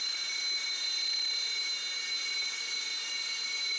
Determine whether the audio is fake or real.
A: real